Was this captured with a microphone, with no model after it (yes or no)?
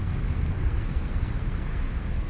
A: no